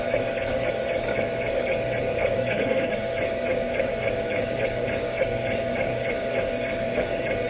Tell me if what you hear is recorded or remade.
remade